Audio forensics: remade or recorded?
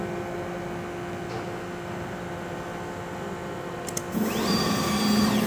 recorded